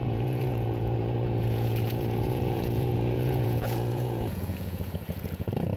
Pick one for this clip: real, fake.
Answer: fake